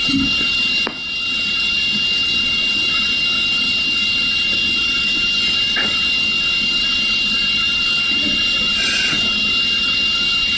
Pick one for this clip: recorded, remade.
recorded